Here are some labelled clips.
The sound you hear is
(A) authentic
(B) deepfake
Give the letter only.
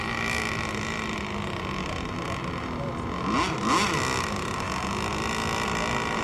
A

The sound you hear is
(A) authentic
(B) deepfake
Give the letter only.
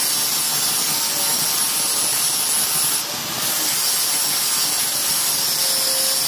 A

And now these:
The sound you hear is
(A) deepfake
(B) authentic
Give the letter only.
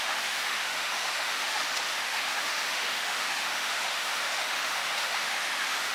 A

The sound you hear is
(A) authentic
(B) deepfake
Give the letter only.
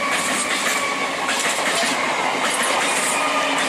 A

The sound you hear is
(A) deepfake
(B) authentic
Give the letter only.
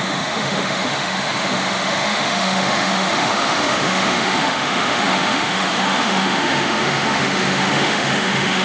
A